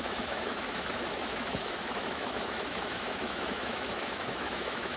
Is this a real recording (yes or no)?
no